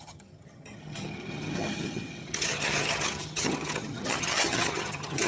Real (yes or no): no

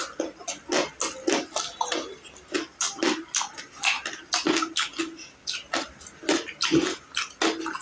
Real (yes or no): yes